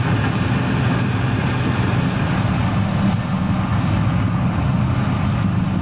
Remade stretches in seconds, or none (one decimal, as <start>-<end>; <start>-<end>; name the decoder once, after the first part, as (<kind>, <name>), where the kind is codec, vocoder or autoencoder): none